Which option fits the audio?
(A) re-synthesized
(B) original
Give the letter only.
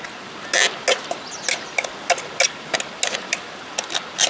B